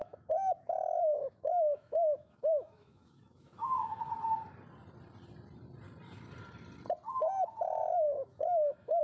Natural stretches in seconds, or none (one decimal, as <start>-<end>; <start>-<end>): 4.0-7.8